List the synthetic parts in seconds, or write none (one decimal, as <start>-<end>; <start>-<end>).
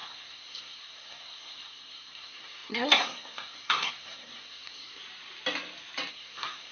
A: 0.0-5.0; 6.1-6.7